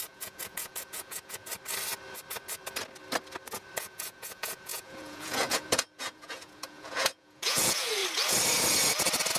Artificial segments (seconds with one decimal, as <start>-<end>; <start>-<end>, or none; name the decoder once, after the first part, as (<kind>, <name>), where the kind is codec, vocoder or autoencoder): 0.0-1.5 (vocoder, Vocos); 3.8-8.0

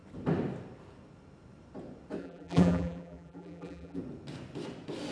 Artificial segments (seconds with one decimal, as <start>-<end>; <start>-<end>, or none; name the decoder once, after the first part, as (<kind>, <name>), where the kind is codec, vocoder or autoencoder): 2.2-4.0 (vocoder, BigVGAN v2)

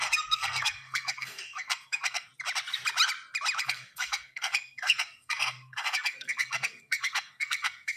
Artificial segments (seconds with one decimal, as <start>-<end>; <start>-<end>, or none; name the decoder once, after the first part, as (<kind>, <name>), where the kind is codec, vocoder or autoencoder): 0.0-2.3 (codec, SNAC); 3.6-8.0

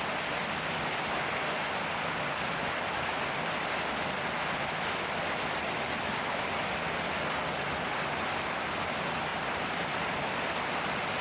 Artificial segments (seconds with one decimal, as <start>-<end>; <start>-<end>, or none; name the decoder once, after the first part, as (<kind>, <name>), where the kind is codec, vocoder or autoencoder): 9.3-10.2 (vocoder, BigVGAN v2)

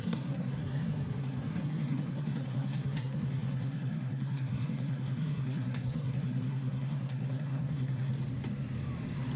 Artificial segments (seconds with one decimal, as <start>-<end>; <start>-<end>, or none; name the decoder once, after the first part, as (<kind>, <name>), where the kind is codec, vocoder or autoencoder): 0.0-8.1 (codec, SNAC)

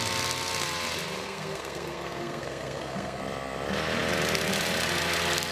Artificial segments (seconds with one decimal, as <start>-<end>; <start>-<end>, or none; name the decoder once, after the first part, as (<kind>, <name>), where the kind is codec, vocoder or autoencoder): 1.2-3.2 (codec, SNAC)

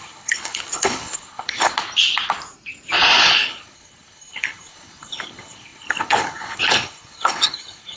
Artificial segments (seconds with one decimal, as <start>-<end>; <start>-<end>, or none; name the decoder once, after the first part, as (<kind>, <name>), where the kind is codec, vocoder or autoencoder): 0.0-1.7 (codec, HILCodec); 3.2-8.0

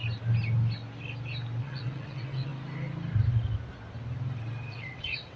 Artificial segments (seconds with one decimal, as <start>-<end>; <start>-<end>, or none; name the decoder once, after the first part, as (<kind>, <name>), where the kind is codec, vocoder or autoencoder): 1.6-2.5 (vocoder, WaveNeXt); 4.7-5.4